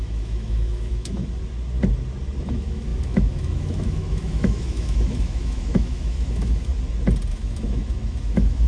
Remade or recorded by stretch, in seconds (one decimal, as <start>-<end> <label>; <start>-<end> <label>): 0.0-1.2 remade; 1.2-2.4 recorded; 2.4-6.7 remade; 6.7-7.3 recorded; 7.3-8.7 remade